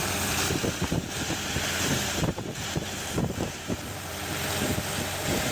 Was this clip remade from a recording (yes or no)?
yes